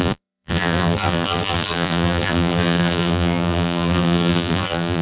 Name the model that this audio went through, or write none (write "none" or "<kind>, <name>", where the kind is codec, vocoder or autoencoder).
vocoder, BigVGAN v2